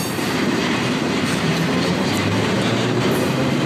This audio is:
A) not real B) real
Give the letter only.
A